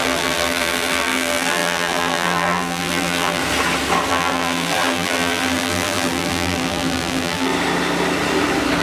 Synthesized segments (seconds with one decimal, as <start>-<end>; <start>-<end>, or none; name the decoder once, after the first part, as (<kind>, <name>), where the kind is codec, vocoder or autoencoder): 0.0-3.4 (vocoder, BigVGAN v2); 4.1-7.5